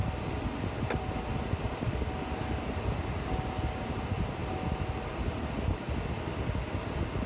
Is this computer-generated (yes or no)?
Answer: no